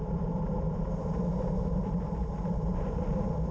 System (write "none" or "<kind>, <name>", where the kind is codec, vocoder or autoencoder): vocoder, BigVGAN v2